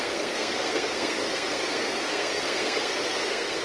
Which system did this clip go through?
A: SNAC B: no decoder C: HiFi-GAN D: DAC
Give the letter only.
A